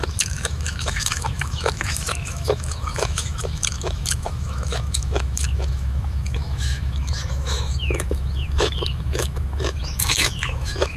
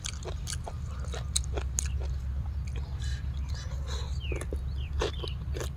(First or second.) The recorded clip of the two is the second